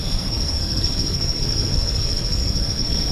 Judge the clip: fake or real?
fake